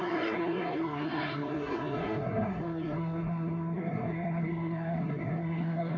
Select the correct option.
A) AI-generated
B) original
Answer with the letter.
A